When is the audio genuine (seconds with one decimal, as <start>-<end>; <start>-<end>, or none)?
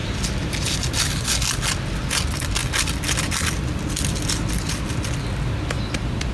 0.0-6.3